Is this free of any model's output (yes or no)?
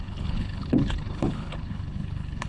no